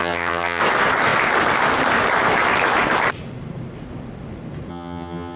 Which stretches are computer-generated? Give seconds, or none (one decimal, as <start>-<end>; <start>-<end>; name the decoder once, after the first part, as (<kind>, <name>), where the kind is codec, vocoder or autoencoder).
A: 0.0-0.6 (vocoder, HiFi-GAN); 4.7-5.4

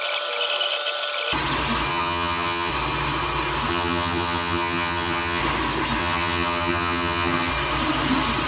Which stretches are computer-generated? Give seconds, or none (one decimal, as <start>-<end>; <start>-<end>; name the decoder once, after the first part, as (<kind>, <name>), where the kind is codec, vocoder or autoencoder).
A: 1.9-2.7 (vocoder, HiFi-GAN); 3.7-5.4; 6.0-7.5

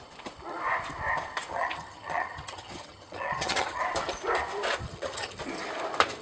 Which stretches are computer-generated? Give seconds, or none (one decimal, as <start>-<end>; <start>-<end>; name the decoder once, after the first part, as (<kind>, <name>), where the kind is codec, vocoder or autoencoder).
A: 1.5-3.8 (vocoder, HiFi-GAN); 4.8-5.4

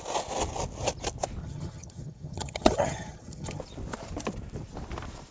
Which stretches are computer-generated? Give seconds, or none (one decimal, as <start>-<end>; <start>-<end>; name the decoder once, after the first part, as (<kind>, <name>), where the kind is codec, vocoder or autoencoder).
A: 1.4-3.6 (vocoder, HiFi-GAN)

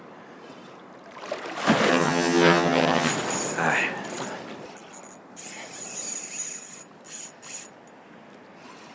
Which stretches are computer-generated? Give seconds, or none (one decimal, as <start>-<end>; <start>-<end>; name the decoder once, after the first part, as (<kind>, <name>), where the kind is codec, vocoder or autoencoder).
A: 1.9-3.1 (vocoder, HiFi-GAN)

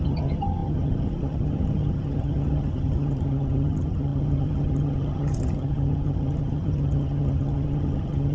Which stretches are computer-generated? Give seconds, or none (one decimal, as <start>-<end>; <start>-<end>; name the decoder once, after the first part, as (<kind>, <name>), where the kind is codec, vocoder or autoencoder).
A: 0.0-8.3 (vocoder, HiFi-GAN)

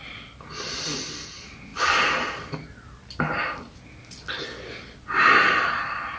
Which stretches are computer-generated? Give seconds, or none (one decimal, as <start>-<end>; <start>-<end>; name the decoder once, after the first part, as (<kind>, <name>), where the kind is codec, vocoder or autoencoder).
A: none

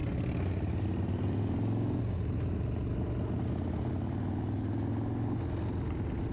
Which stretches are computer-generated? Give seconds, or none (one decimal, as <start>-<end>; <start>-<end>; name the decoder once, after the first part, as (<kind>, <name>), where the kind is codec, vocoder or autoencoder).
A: none